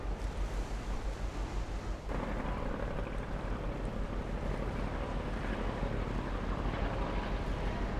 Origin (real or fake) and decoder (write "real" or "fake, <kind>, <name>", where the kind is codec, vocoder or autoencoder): real